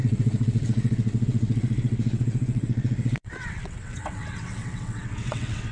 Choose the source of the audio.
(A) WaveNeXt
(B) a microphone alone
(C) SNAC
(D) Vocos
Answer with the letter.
A